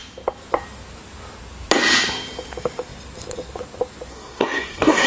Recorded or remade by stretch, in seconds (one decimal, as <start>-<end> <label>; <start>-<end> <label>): 0.0-4.1 recorded; 4.1-5.1 remade